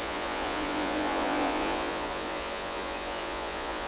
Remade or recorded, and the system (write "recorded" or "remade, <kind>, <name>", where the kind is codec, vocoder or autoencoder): remade, vocoder, Vocos